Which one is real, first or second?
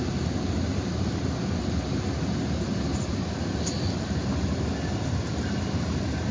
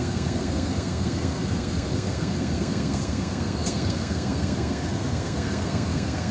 first